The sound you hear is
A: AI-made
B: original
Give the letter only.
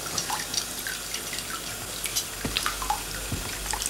B